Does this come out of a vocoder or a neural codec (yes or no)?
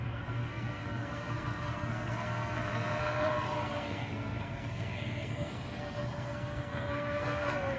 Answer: yes